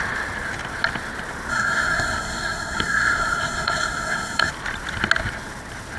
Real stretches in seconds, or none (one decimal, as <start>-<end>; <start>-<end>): 0.0-1.5; 4.5-6.0